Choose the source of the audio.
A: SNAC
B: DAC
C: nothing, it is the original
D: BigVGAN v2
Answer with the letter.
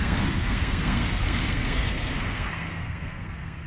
A